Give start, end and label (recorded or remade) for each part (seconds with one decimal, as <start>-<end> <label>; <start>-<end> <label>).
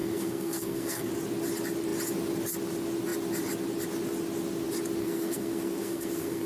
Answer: 0.0-1.1 remade; 1.1-5.0 recorded; 5.0-6.5 remade